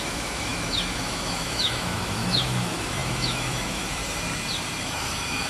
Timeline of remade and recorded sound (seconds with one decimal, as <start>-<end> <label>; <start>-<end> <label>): 0.0-4.0 remade; 4.0-4.8 recorded; 4.8-5.5 remade